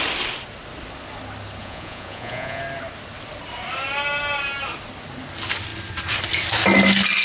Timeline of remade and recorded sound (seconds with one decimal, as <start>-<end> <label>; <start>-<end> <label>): 0.0-1.6 recorded; 1.6-2.6 remade; 2.6-7.2 recorded